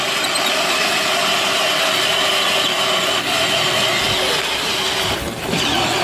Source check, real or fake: real